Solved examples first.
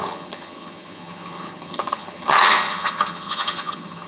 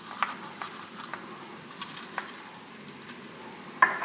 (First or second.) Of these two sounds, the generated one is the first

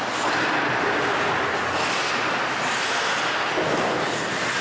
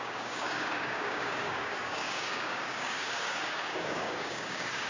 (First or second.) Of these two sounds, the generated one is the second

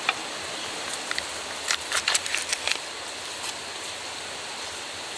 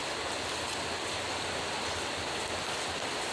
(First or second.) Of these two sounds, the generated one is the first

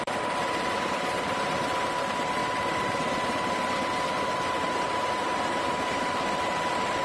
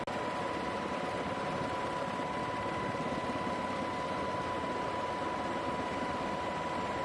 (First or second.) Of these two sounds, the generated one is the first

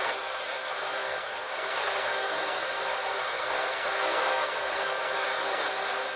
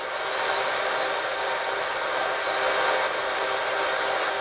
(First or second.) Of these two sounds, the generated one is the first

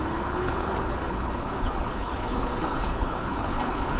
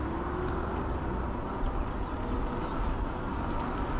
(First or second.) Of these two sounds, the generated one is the first